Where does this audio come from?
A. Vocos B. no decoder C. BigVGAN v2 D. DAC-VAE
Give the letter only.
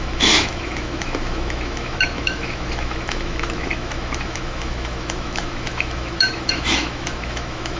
D